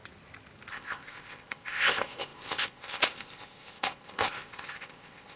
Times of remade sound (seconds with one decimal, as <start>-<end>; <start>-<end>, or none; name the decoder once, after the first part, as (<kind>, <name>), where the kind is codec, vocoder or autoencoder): 0.7-5.4 (codec, ZipCodec)